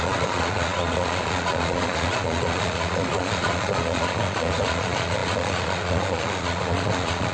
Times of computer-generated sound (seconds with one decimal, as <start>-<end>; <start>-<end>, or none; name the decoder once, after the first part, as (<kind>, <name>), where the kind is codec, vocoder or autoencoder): 0.0-7.3 (vocoder, Vocos)